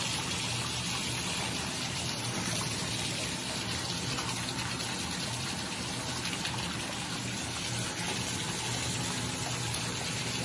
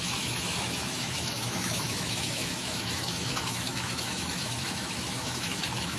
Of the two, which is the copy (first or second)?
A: second